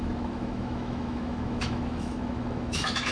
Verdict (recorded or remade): remade